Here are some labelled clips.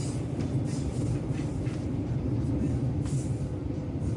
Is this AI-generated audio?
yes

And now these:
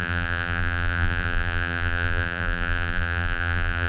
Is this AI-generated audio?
yes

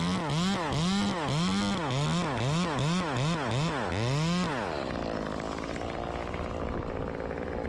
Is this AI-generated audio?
no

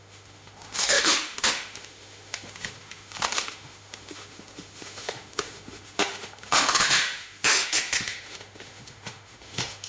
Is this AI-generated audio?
yes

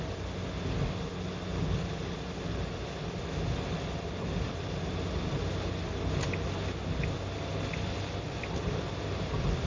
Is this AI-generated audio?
no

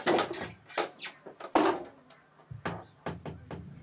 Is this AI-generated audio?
no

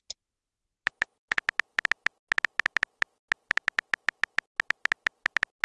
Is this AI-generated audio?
no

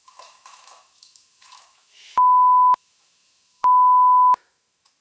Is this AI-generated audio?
yes